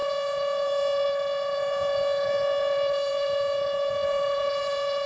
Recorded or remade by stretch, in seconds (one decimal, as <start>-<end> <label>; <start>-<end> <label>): 0.0-5.1 remade